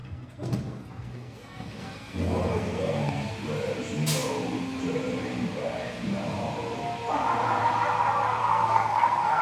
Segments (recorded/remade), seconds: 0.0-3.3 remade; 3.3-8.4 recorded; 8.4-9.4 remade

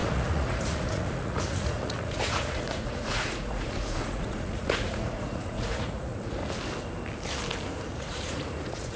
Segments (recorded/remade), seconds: 0.0-6.4 remade; 6.4-7.9 recorded; 7.9-9.0 remade

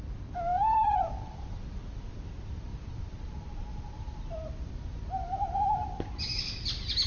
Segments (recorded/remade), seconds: 0.0-0.5 recorded; 0.5-1.8 remade; 1.8-2.7 recorded; 2.7-3.3 remade; 3.3-3.7 recorded; 3.7-6.5 remade; 6.5-7.1 recorded

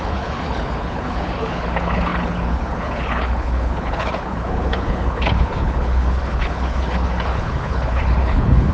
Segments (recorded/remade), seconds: 0.0-8.7 remade

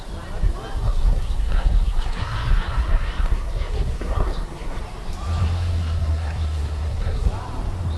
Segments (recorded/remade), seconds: 0.0-0.8 recorded; 0.8-4.8 remade; 4.8-5.4 recorded; 5.4-7.3 remade; 7.3-8.0 recorded

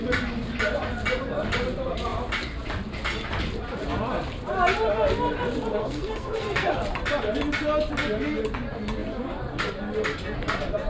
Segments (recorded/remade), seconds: 0.0-5.7 recorded; 5.7-6.8 remade; 6.8-10.9 recorded

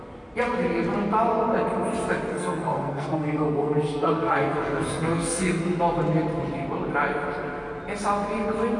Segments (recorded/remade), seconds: 0.0-2.3 recorded; 2.3-5.6 remade; 5.6-8.8 recorded